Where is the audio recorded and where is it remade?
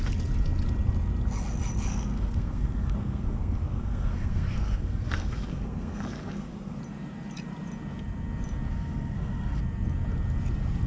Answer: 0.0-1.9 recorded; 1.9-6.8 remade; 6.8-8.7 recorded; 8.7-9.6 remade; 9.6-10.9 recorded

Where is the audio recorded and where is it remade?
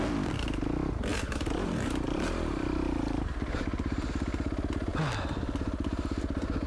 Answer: 0.0-1.1 recorded; 1.1-4.1 remade; 4.1-6.7 recorded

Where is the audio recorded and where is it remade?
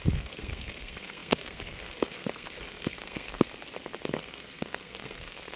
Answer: 0.0-3.5 remade; 3.5-4.2 recorded; 4.2-5.6 remade